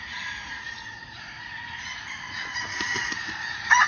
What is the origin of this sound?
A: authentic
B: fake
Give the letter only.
B